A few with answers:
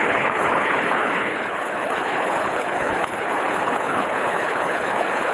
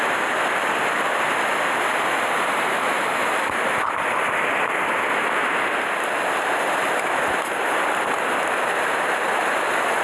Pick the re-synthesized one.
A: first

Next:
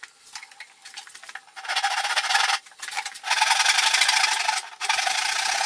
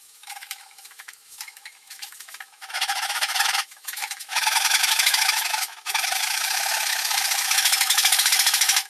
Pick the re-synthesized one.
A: second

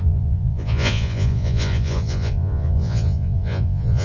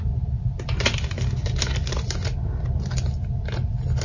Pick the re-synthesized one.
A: first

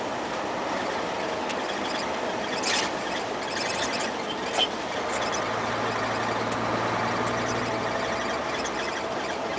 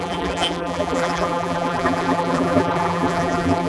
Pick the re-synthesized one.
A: second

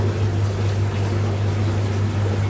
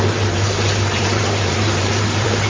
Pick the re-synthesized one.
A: second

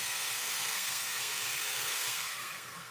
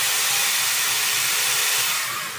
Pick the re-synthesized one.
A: first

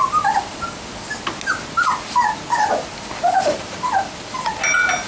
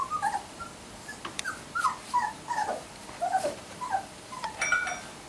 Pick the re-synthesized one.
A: second